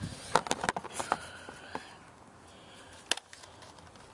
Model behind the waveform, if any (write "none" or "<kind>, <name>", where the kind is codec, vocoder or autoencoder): none